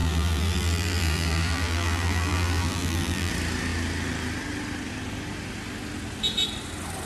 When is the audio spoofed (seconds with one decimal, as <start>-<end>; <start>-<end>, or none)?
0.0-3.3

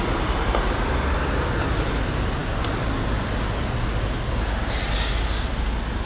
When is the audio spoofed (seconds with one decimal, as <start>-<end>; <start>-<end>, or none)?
none

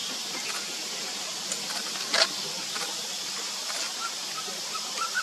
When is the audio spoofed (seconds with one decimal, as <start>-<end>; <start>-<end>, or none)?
0.6-5.2

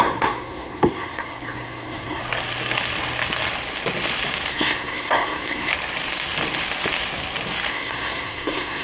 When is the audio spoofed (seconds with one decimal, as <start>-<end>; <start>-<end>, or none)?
0.0-2.2; 4.5-5.7; 7.7-8.8